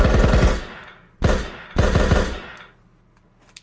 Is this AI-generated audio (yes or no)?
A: no